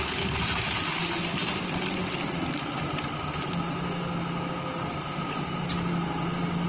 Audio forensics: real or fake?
real